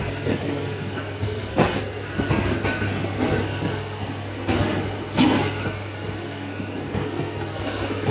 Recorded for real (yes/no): no